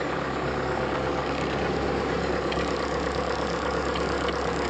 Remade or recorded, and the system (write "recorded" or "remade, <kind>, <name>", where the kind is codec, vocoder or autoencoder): remade, codec, DAC